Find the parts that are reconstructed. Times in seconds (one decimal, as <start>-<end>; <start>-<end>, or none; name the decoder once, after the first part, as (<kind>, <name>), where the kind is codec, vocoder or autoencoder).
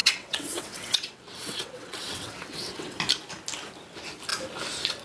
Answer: 0.0-3.0 (vocoder, WaveNeXt)